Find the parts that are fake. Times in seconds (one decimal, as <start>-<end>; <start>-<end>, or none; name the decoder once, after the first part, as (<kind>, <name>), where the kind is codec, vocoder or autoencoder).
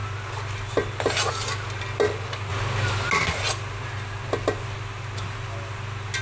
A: none